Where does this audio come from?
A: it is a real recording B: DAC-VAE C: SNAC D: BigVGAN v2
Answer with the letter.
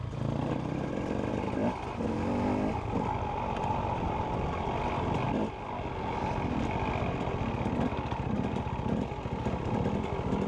A